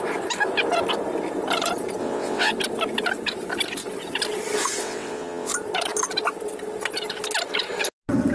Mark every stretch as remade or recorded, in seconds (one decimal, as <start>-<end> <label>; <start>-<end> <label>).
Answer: 0.0-2.0 recorded; 2.0-2.5 remade; 2.5-4.8 recorded; 4.8-5.5 remade; 5.5-8.3 recorded